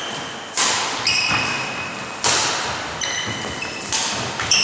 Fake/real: real